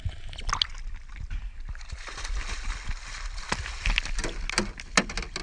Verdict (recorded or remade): recorded